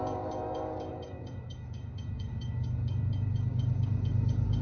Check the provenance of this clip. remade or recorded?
remade